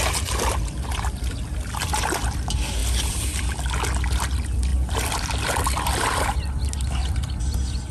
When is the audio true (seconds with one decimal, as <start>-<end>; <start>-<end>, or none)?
0.0-2.8; 3.4-4.7; 6.6-7.9